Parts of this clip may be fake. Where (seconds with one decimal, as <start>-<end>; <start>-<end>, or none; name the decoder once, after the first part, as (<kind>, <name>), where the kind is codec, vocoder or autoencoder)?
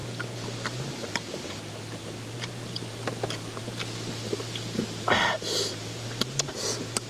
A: none